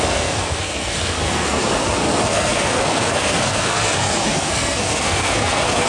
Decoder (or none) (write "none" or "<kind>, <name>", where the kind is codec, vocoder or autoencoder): codec, SNAC